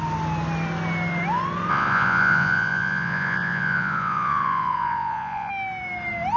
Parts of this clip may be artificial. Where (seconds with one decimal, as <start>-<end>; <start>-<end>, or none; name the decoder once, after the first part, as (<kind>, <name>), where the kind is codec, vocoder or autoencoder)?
1.7-5.5 (vocoder, Vocos)